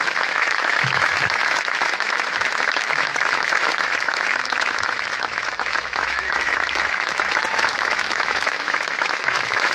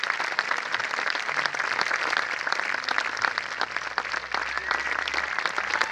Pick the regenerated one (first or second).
first